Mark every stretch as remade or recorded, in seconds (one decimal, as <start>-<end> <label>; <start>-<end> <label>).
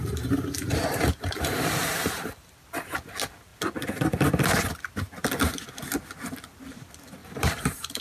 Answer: 0.0-2.5 remade; 2.5-7.2 recorded; 7.2-8.0 remade